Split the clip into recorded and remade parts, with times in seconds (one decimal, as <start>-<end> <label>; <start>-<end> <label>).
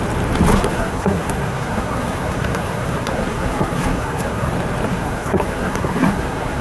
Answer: 0.0-0.5 recorded; 0.5-4.5 remade; 4.5-4.9 recorded; 4.9-6.6 remade